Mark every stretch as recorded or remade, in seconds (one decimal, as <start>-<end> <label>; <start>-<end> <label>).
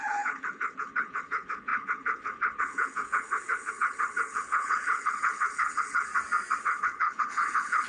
0.0-6.1 remade; 6.1-6.6 recorded; 6.6-7.9 remade